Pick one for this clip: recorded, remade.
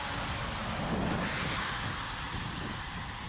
recorded